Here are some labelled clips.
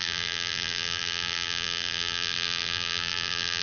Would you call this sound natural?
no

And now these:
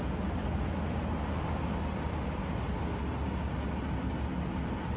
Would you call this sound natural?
yes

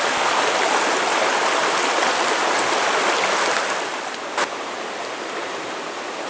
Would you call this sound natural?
yes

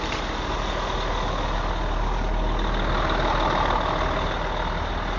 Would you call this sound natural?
yes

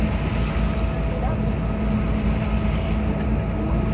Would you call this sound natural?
yes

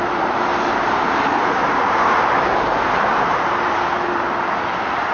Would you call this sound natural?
no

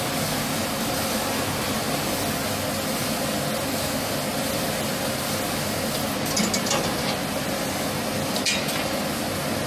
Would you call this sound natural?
yes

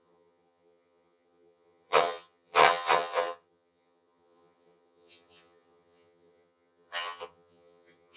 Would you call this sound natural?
no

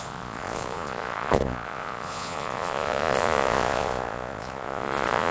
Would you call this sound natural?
no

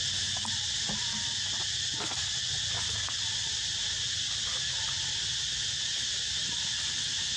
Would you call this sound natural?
yes